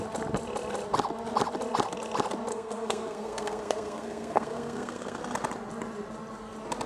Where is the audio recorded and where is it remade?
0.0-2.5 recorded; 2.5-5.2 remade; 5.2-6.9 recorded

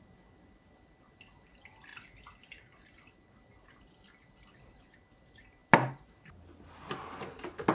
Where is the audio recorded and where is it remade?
0.0-7.7 recorded

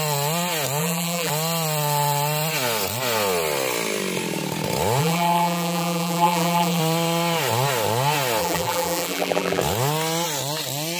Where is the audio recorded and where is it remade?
0.0-0.8 recorded; 0.8-1.3 remade; 1.3-5.0 recorded; 5.0-6.8 remade; 6.8-8.4 recorded; 8.4-9.6 remade; 9.6-11.0 recorded

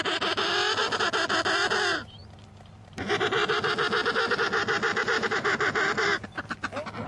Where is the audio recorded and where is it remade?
0.0-2.2 recorded; 2.2-3.5 remade; 3.5-5.0 recorded; 5.0-6.5 remade; 6.5-7.1 recorded